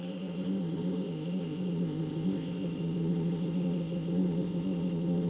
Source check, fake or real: fake